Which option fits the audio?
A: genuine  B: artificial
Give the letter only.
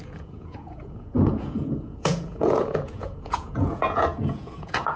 B